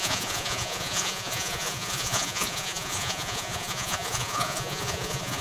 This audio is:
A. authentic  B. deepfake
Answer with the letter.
B